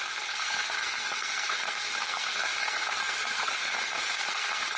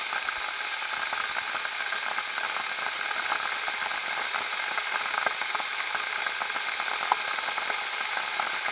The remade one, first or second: first